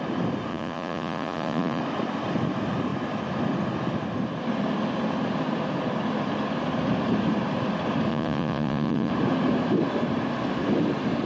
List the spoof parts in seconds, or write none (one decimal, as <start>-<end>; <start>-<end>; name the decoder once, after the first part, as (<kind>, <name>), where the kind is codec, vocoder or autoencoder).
0.5-1.8 (vocoder, Vocos); 8.1-9.1